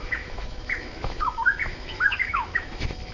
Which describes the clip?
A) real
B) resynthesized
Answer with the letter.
B